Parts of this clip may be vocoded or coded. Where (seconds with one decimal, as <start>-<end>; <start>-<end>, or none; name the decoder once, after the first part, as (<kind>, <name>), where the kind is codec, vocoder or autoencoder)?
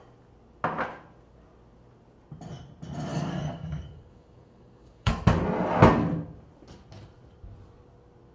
3.1-5.1 (codec, DAC)